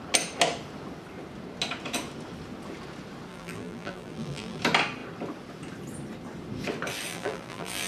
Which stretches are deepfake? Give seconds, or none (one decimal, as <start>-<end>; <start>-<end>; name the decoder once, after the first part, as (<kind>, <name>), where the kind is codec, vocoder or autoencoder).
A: 3.3-4.6 (vocoder, BigVGAN v2); 7.1-7.9